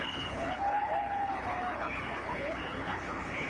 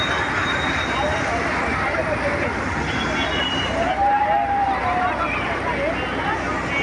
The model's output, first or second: first